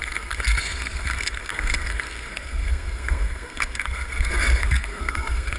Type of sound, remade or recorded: remade